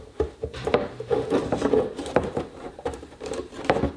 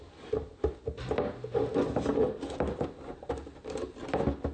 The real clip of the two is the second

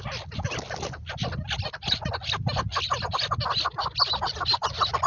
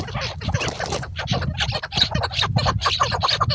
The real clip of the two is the first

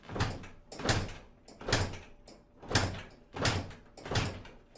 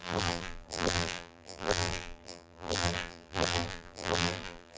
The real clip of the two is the first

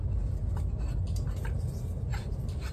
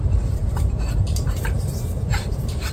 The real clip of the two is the first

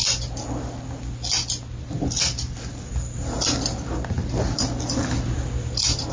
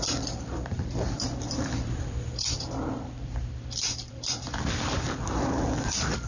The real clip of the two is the first